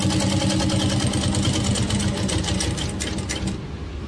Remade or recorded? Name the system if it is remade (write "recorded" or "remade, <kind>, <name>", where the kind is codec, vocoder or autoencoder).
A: recorded